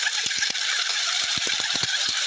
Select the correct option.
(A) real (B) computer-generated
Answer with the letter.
A